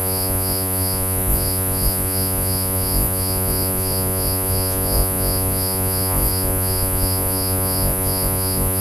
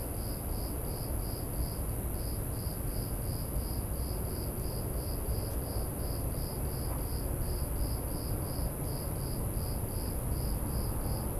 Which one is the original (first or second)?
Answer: second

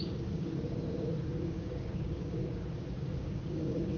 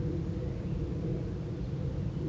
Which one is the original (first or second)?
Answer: second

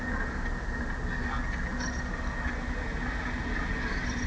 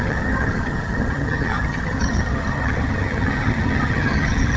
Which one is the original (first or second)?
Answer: first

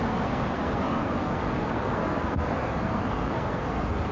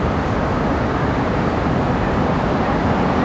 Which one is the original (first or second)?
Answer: second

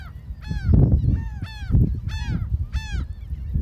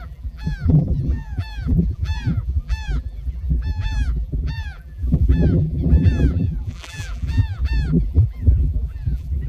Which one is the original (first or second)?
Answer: first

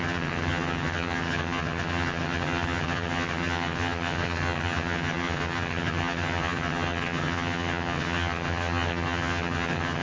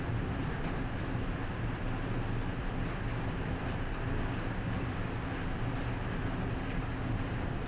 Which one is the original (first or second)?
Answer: second